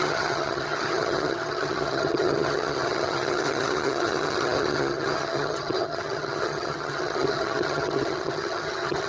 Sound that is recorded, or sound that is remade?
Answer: remade